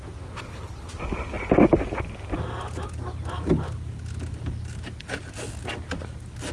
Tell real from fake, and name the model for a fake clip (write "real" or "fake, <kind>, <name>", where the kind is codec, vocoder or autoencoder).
real